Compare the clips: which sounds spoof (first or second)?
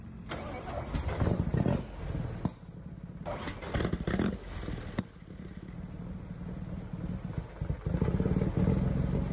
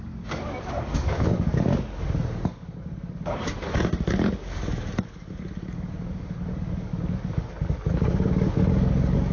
second